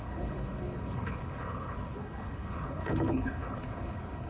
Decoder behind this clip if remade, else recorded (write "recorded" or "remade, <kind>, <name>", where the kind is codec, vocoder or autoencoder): remade, codec, HILCodec